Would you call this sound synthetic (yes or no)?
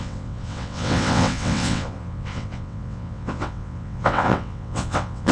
yes